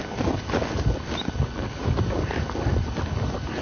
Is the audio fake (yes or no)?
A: no